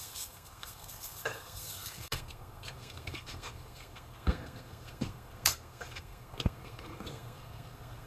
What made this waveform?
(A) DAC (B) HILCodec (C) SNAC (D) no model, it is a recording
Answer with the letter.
C